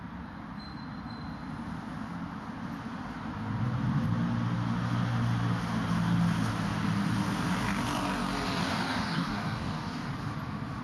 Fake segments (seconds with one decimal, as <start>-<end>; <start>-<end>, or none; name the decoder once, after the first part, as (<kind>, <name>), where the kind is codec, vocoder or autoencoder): 8.6-10.1 (codec, DAC)